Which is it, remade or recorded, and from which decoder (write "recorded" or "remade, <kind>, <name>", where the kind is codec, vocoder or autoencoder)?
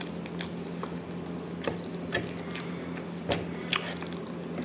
recorded